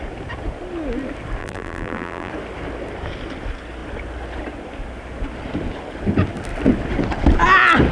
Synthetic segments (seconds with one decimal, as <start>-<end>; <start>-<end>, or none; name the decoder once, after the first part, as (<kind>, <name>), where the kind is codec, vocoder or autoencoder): 1.4-2.3 (vocoder, BigVGAN v2)